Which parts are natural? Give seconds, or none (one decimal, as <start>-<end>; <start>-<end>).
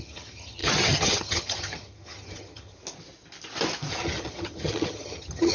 2.8-3.9